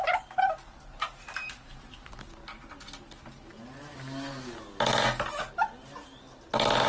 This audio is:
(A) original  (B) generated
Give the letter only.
A